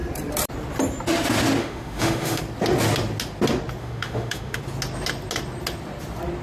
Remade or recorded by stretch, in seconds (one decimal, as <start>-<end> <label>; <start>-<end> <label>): 0.0-1.6 recorded; 1.6-2.4 remade; 2.4-3.8 recorded; 3.8-4.6 remade; 4.6-6.4 recorded

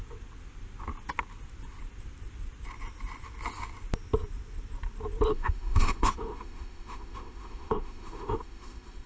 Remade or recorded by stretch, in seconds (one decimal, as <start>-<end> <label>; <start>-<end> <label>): 0.0-5.3 recorded; 5.3-9.1 remade

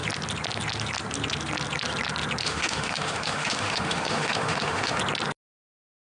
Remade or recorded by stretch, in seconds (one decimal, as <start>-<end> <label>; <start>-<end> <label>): 0.0-2.4 recorded; 2.4-5.0 remade; 5.0-6.2 recorded

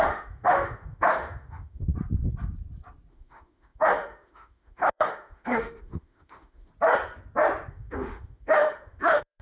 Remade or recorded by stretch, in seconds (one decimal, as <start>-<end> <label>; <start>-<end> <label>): 0.0-1.9 remade; 1.9-3.1 recorded; 3.1-6.7 remade; 6.7-7.7 recorded; 7.7-9.4 remade